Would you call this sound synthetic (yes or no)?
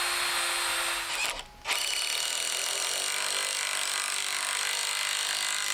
no